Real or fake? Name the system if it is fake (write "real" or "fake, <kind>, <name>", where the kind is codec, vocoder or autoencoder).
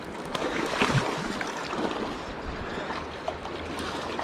real